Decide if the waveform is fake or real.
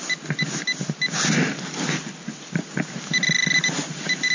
real